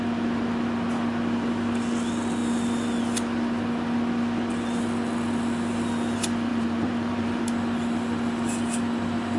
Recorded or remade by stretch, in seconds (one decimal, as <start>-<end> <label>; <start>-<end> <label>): 0.0-6.5 recorded; 6.5-7.4 remade; 7.4-9.4 recorded